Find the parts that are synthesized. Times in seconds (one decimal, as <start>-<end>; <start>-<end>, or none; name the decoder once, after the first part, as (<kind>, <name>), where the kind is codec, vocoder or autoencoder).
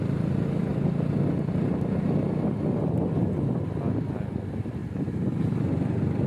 none